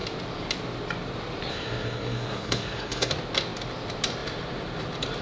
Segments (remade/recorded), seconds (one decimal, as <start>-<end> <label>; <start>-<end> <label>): 0.0-1.5 recorded; 1.5-3.1 remade; 3.1-5.2 recorded